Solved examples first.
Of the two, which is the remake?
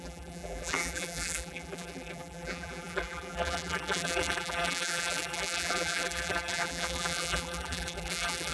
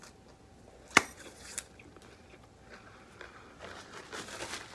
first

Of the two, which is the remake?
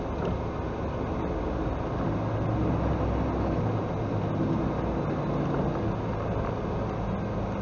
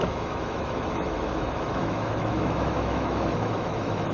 second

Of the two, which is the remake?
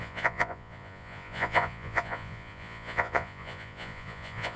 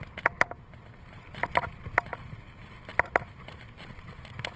first